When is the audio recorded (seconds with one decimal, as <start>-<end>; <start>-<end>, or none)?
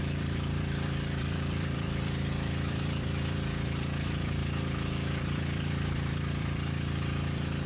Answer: 4.4-5.2